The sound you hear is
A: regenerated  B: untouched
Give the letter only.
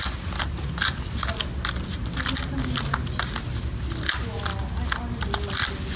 B